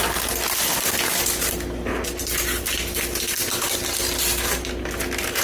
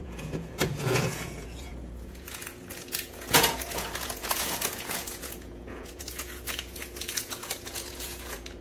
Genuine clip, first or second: first